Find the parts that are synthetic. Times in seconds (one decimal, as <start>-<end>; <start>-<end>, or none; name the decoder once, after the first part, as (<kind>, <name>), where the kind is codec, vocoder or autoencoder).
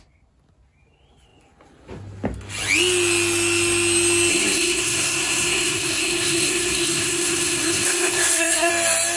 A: 4.3-8.7 (codec, SNAC)